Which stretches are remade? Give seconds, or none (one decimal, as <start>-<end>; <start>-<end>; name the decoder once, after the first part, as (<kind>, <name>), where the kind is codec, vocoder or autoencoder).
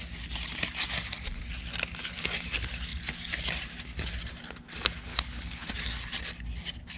5.1-5.7 (codec, HILCodec)